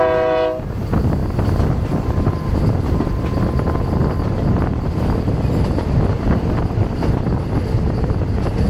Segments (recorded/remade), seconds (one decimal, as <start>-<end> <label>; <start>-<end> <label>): 0.0-8.7 recorded